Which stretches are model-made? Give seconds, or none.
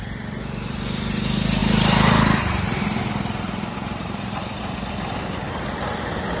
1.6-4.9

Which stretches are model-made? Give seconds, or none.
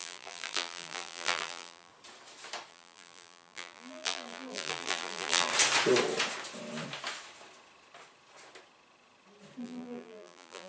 0.0-1.9; 2.7-5.5; 9.6-10.7